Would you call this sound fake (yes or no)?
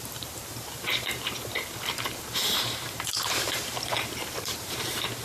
yes